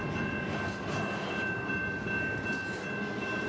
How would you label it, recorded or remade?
recorded